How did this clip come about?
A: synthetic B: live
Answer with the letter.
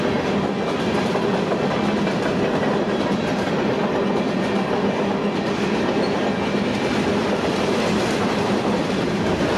B